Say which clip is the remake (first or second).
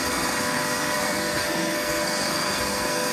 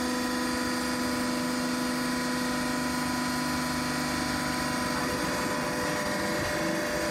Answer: first